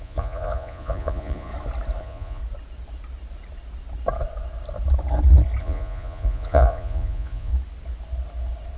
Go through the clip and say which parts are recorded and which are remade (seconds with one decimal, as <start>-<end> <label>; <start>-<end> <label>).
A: 0.0-1.5 remade; 1.5-2.0 recorded; 2.0-2.4 remade; 2.4-5.6 recorded; 5.6-7.5 remade; 7.5-8.8 recorded